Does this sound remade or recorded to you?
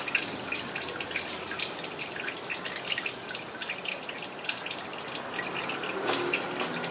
recorded